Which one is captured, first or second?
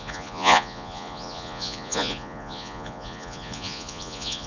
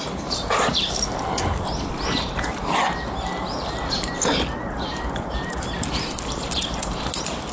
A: second